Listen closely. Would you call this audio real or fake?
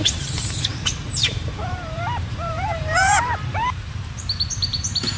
fake